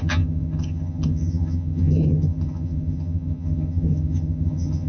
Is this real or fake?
fake